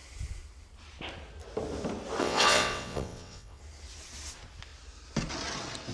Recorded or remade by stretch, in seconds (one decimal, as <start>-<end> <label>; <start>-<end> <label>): 0.0-2.2 recorded; 2.2-3.6 remade; 3.6-5.9 recorded